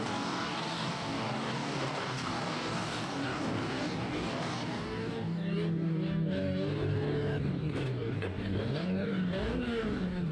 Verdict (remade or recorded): remade